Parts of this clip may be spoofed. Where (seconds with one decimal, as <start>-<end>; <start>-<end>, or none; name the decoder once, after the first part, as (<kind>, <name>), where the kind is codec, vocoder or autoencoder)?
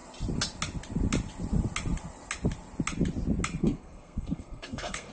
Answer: 3.6-5.1 (codec, SNAC)